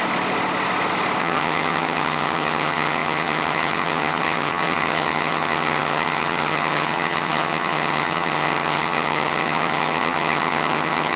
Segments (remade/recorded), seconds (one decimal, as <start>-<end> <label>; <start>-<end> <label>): 0.0-1.2 recorded; 1.2-11.2 remade